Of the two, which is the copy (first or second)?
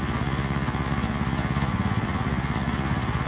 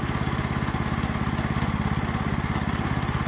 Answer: first